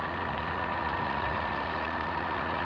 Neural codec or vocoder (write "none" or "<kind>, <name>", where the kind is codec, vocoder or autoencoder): vocoder, Vocos